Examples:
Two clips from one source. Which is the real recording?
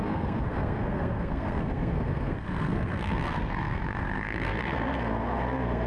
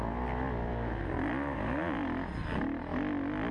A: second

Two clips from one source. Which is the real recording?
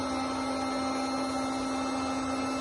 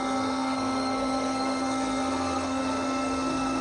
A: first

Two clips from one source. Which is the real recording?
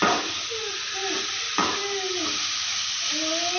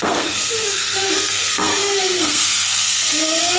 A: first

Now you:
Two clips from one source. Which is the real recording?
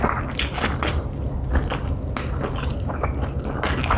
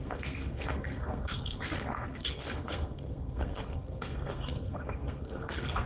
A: first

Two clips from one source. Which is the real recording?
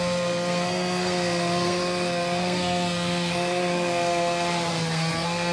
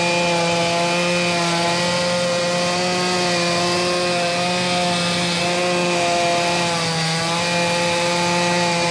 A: second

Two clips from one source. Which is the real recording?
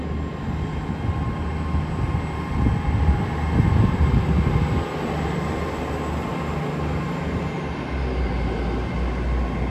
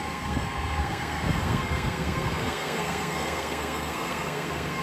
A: first